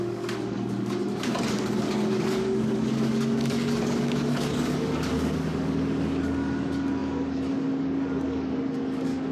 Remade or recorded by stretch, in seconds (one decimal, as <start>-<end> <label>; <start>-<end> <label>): 0.0-9.3 remade